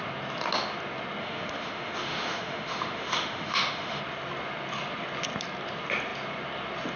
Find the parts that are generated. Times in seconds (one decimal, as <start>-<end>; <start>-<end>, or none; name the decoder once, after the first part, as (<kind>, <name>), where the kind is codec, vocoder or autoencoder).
1.2-4.0 (autoencoder, DAC-VAE)